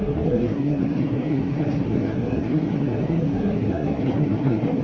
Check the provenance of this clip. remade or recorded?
remade